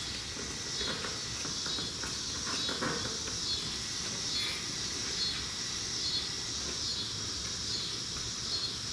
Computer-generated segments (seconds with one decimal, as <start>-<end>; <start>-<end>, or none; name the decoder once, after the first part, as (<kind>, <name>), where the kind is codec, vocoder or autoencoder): none